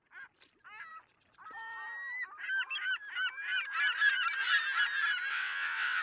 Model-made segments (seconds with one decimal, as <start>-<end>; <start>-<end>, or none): 5.3-6.0